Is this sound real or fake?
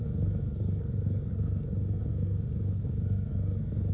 fake